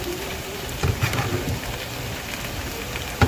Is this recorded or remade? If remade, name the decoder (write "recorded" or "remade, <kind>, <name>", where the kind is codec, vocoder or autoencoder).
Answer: remade, vocoder, BigVGAN v2